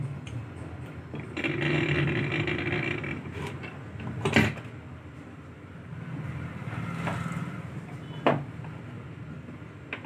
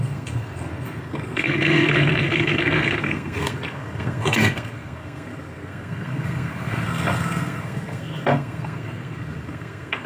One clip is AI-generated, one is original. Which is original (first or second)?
first